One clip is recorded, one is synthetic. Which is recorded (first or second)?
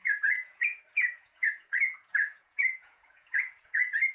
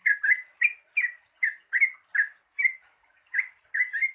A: second